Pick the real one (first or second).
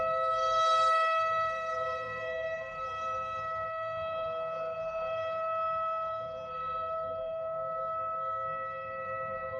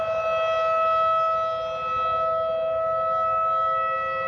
second